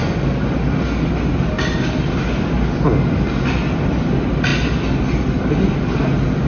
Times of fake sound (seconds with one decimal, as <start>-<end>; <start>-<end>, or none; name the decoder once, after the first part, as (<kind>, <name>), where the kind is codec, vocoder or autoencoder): none